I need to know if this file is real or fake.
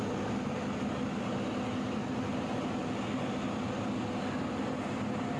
real